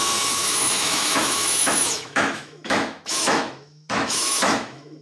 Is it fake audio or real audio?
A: fake